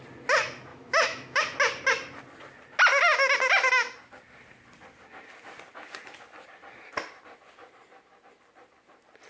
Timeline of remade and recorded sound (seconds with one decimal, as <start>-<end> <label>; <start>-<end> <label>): 0.0-0.7 recorded; 0.7-1.4 remade; 1.4-9.3 recorded